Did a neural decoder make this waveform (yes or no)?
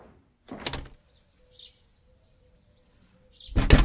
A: no